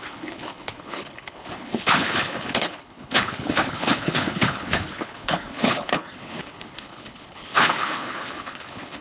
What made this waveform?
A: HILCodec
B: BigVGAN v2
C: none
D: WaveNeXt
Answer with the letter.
A